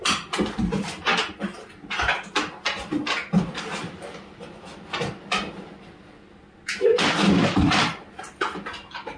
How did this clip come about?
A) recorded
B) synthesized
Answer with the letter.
A